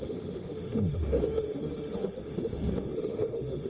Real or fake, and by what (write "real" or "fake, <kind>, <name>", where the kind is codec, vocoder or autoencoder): fake, autoencoder, DAC-VAE